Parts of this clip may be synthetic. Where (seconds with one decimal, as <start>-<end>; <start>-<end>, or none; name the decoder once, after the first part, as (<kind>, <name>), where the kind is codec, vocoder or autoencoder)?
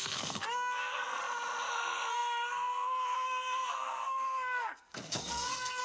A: 0.0-1.2 (codec, SNAC); 1.7-5.8